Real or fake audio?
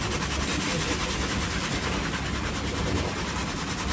real